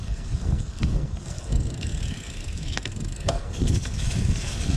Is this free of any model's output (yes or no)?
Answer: no